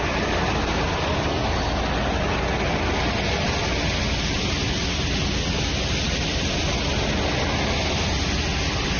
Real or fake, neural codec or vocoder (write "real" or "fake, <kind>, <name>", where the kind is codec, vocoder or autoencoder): real